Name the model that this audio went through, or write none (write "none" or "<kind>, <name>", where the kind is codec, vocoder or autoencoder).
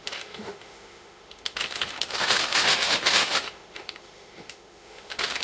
autoencoder, DAC-VAE